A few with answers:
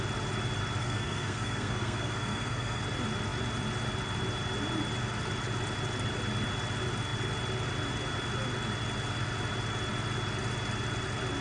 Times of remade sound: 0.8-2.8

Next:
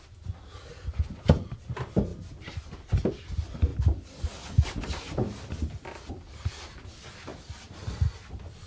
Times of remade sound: 0.0-2.1; 3.1-3.7; 6.1-8.7

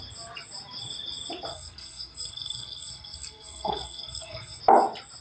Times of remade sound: 1.5-4.6